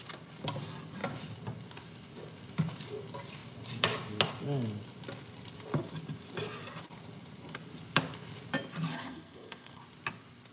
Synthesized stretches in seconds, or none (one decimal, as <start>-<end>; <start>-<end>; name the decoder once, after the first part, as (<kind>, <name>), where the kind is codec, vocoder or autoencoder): 8.9-9.8 (codec, SNAC)